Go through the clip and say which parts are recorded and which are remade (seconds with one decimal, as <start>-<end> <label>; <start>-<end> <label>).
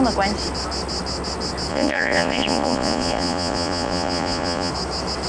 0.0-1.7 recorded; 1.7-4.7 remade; 4.7-5.3 recorded